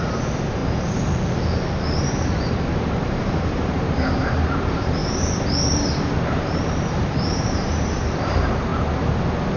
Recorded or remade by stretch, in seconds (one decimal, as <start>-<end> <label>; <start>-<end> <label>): 0.0-5.0 remade; 5.0-6.0 recorded; 6.0-8.7 remade; 8.7-9.6 recorded